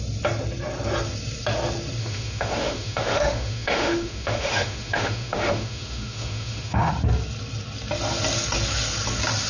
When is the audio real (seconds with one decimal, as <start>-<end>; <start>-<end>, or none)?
0.0-2.0; 6.9-9.5